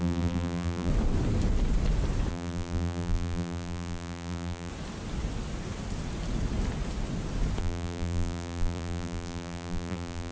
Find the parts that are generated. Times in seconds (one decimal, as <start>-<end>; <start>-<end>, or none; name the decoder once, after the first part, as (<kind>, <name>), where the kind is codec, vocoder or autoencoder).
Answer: 0.0-0.9 (vocoder, BigVGAN v2); 2.3-4.7; 7.6-10.3